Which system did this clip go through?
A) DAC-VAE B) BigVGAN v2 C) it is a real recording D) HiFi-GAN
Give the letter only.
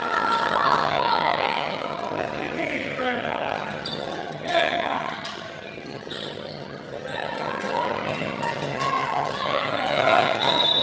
D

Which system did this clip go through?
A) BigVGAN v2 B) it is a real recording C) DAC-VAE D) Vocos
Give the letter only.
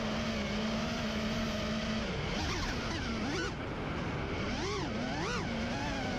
B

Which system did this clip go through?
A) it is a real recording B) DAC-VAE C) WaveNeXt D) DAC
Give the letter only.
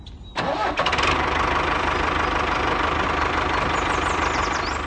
A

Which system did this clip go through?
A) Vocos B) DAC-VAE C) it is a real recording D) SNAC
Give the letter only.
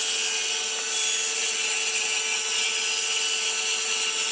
C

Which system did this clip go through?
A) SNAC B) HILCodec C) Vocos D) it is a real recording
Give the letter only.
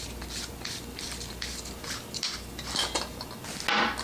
D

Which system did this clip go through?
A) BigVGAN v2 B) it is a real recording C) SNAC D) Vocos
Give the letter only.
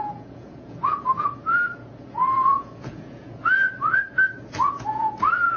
D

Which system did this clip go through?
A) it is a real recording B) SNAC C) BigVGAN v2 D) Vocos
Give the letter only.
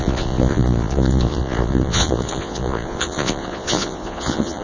D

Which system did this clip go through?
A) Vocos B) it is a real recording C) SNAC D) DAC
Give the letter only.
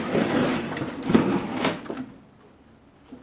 B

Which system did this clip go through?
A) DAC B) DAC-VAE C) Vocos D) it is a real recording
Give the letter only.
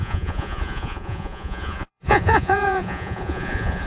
C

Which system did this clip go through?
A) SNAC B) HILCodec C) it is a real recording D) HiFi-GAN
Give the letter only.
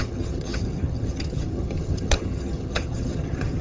D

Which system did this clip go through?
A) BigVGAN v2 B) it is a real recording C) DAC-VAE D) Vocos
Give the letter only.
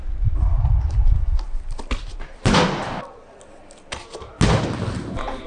B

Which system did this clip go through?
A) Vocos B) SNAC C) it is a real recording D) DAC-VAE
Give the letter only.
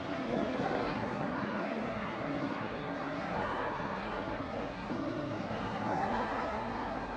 B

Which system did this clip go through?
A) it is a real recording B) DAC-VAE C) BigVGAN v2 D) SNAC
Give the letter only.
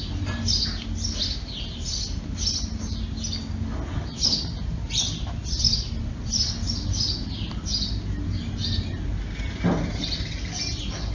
A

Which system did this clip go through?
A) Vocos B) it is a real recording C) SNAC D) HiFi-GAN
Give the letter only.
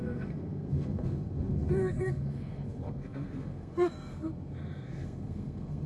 C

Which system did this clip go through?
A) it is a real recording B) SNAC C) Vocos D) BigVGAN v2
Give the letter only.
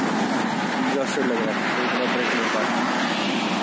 A